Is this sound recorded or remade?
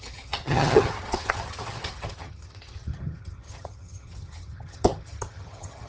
remade